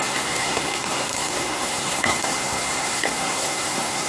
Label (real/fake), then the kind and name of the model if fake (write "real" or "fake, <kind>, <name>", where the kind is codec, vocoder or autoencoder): fake, codec, SNAC